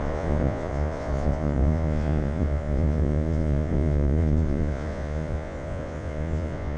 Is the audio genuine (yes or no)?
no